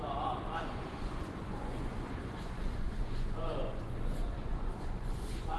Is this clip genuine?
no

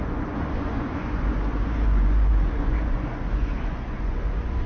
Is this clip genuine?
no